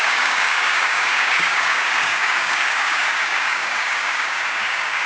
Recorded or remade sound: remade